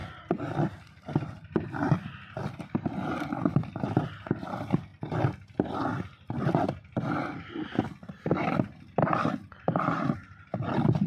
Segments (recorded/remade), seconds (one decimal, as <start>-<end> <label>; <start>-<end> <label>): 0.0-4.9 remade; 4.9-8.2 recorded; 8.2-11.1 remade